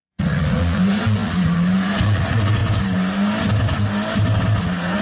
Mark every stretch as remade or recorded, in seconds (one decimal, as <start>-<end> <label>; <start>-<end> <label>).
0.0-2.6 remade; 2.6-4.6 recorded; 4.6-5.0 remade